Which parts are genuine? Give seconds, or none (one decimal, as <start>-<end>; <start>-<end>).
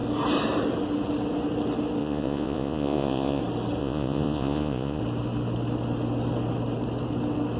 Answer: 0.0-2.0; 3.4-3.8; 5.0-7.6